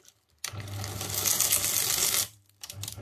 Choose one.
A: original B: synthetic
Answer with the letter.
A